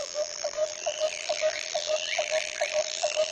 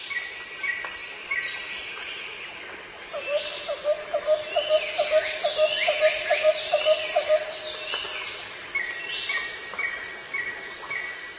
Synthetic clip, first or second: first